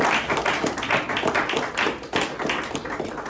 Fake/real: real